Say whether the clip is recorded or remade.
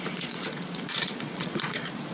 remade